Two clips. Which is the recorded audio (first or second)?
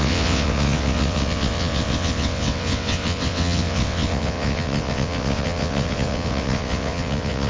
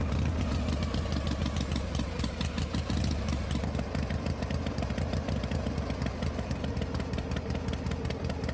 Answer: second